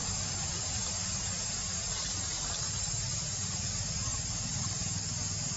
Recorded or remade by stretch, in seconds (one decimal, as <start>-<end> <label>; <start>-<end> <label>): 0.0-2.8 remade; 2.8-5.6 recorded